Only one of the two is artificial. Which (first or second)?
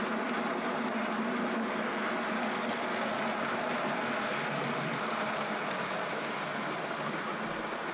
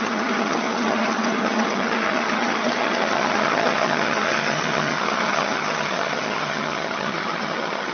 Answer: second